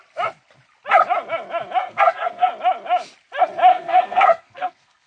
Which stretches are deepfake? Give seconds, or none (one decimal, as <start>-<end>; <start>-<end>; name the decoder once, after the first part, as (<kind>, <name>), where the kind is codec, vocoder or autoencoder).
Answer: 1.8-2.5 (codec, SNAC); 3.7-5.1